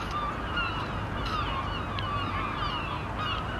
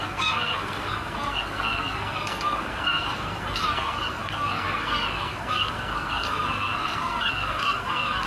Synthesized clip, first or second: second